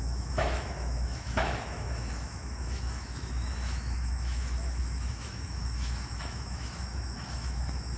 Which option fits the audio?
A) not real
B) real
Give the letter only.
A